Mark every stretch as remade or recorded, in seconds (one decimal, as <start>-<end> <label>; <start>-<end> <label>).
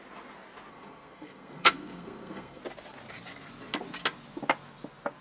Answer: 0.0-0.7 recorded; 0.7-2.6 remade; 2.6-5.2 recorded